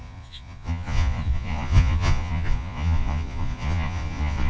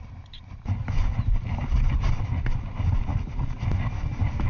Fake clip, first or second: first